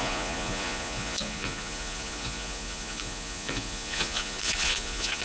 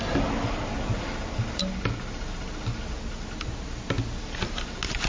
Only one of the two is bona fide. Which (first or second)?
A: second